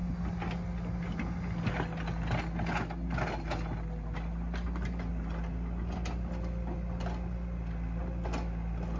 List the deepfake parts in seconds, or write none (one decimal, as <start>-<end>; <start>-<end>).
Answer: none